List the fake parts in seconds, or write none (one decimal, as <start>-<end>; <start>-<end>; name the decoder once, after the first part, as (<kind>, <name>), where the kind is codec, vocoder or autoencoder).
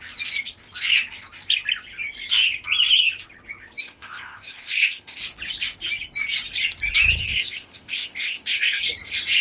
3.8-5.2 (codec, ZipCodec); 7.2-8.8